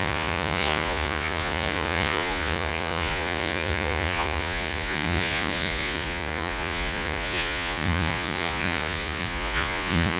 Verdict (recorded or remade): remade